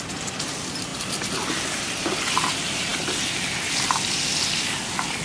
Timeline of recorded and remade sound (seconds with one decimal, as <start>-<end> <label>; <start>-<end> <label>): 0.0-5.2 recorded